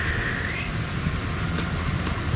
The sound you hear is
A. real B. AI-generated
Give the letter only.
A